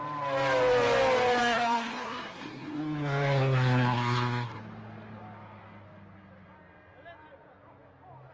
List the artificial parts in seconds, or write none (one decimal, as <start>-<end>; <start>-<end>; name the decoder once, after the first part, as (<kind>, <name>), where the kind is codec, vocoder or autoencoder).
1.4-4.6 (codec, SNAC)